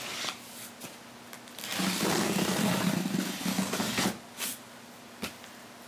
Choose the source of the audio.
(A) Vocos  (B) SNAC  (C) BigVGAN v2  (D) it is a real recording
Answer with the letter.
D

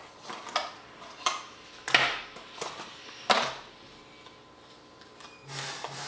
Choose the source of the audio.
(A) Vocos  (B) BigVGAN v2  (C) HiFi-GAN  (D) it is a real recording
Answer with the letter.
D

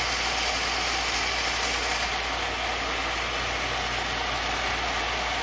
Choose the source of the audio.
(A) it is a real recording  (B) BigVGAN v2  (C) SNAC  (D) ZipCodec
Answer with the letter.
A